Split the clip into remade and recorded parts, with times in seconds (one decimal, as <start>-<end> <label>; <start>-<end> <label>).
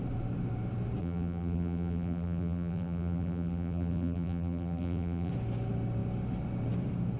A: 0.0-1.0 recorded; 1.0-5.3 remade; 5.3-7.2 recorded